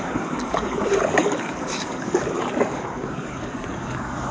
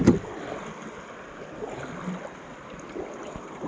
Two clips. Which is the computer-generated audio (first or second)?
first